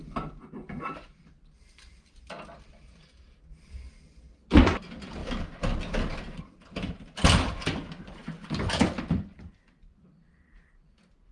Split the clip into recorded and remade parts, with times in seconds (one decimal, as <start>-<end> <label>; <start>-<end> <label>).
0.0-11.3 recorded